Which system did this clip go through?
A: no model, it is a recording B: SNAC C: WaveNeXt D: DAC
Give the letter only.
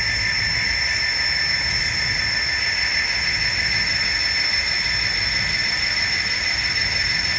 A